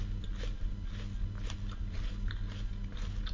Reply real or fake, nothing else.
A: real